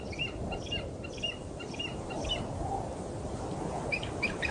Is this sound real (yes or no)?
yes